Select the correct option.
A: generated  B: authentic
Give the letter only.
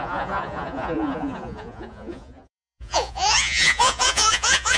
A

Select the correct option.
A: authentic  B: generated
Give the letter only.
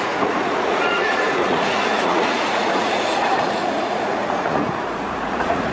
B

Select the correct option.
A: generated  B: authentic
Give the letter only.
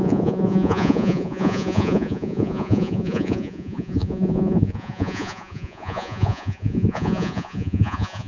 A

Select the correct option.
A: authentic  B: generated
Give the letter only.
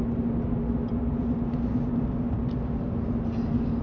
A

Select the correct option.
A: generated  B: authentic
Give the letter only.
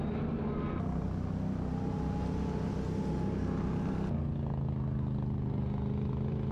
B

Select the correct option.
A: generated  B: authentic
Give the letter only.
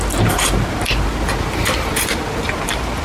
B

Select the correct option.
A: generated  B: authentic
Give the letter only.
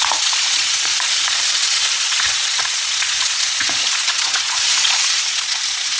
A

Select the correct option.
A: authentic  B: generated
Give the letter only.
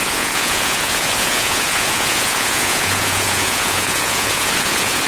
B